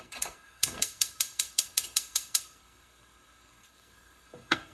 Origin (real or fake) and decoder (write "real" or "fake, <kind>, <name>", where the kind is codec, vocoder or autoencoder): fake, codec, SNAC